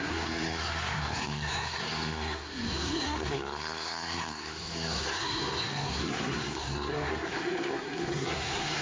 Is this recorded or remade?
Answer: remade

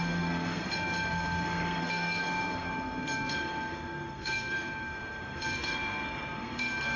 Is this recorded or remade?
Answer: remade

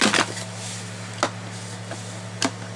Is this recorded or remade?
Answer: recorded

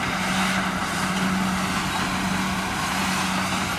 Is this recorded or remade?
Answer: recorded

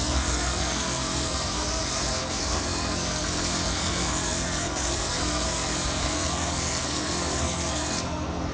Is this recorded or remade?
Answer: remade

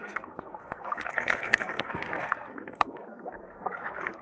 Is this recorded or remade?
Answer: remade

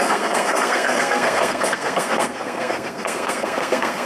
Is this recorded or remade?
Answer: remade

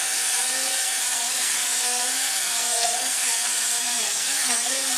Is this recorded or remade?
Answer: remade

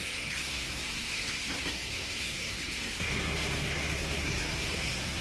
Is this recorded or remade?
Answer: remade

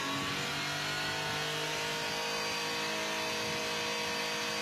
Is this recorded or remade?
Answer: recorded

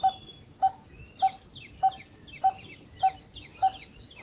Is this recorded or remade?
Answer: recorded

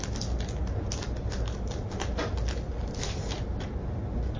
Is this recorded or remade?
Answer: recorded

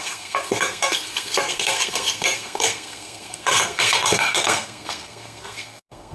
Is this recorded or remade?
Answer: remade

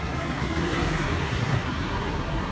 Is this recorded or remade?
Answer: remade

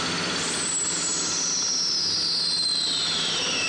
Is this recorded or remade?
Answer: recorded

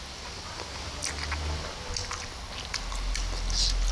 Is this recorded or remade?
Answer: recorded